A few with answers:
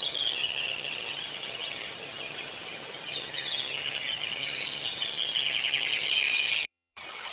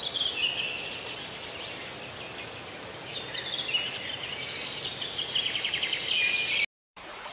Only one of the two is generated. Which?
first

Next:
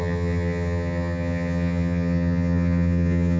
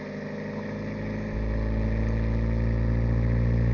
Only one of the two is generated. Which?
first